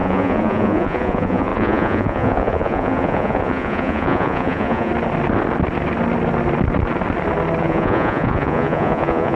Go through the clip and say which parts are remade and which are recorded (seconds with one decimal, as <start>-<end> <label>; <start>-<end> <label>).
0.0-4.9 remade; 4.9-7.6 recorded; 7.6-9.4 remade